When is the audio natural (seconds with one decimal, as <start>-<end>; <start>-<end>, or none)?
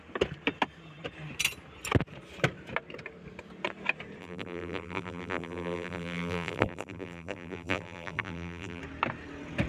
0.0-4.2; 8.8-9.7